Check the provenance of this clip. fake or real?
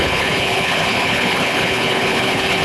fake